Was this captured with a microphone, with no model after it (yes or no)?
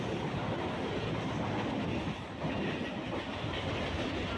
yes